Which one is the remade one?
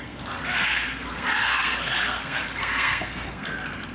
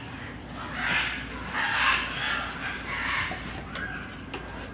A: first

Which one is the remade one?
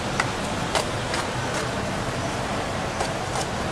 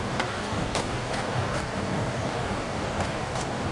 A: second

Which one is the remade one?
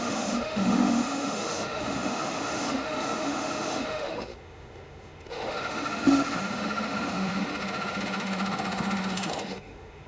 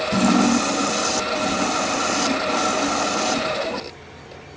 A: first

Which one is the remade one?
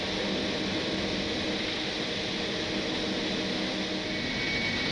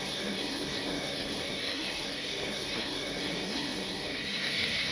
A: second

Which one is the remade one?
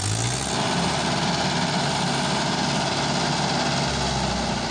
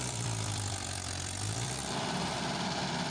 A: second